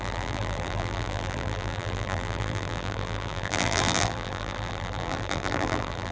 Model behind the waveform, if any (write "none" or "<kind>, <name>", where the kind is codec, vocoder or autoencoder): vocoder, BigVGAN v2